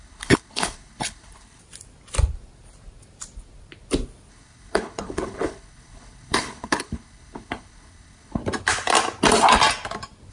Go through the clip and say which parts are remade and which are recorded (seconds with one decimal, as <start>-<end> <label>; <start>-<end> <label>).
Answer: 0.0-1.6 remade; 1.6-4.3 recorded; 4.3-8.4 remade; 8.4-10.3 recorded